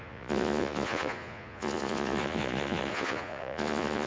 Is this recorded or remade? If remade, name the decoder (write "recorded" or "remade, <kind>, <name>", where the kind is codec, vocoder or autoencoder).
remade, vocoder, Vocos